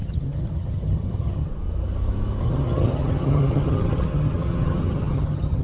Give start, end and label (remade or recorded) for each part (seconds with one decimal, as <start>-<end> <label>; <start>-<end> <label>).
0.0-1.5 remade; 1.5-2.4 recorded; 2.4-5.6 remade